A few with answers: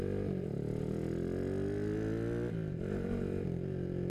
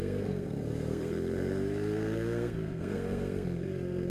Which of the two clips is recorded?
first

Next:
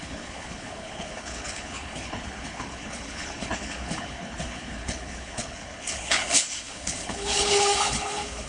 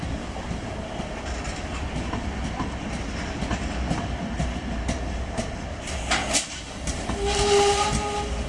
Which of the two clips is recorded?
second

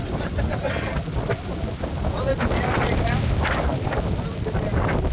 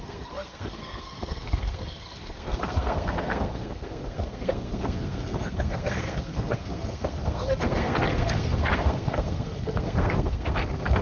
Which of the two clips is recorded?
first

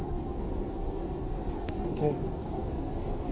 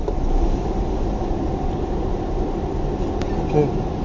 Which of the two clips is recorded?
second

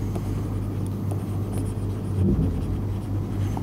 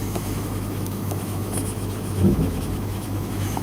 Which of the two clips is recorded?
first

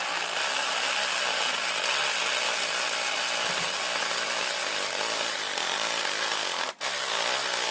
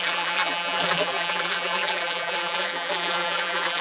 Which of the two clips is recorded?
first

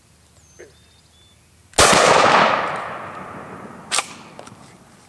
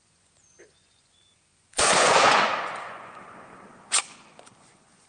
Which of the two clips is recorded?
first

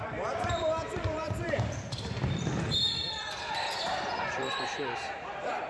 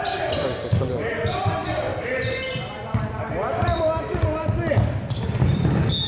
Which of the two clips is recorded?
second